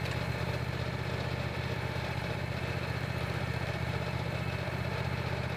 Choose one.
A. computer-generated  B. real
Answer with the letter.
A